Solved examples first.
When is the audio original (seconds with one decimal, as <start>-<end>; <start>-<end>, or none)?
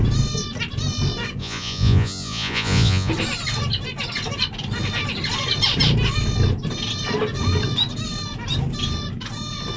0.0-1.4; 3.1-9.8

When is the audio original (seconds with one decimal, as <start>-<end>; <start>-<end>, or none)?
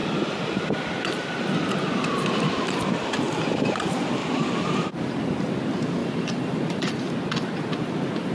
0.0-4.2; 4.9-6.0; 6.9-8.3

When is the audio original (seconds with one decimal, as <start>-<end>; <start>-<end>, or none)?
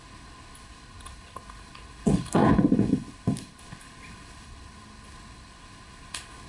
none